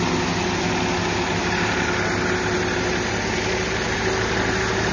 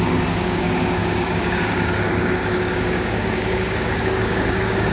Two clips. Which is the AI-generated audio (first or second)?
second